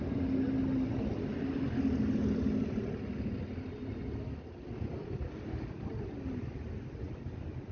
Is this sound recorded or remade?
recorded